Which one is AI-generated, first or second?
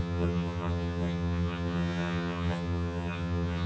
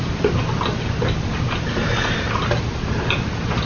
first